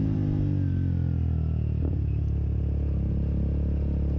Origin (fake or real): real